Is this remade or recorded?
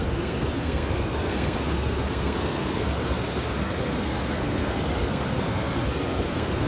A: remade